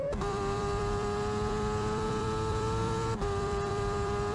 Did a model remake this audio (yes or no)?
yes